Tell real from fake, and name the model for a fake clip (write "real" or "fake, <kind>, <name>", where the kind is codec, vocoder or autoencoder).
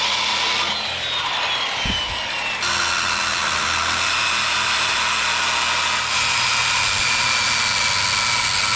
real